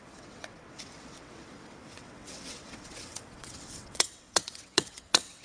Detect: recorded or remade remade